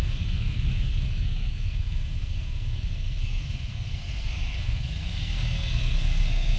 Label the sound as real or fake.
fake